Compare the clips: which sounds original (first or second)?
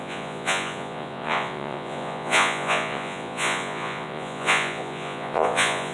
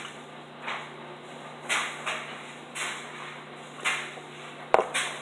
second